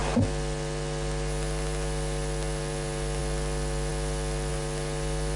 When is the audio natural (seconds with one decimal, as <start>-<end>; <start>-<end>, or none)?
0.0-5.4